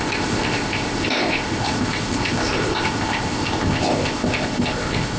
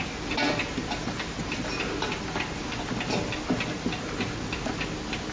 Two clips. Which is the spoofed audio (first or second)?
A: first